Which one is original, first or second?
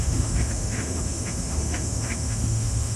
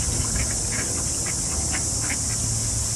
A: second